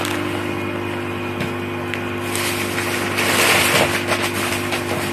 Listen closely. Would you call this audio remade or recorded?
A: recorded